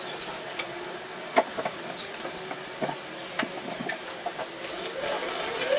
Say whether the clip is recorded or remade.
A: recorded